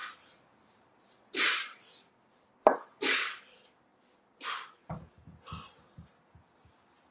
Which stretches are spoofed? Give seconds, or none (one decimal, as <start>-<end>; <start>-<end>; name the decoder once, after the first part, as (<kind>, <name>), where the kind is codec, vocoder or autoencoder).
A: 0.0-2.5 (vocoder, BigVGAN v2)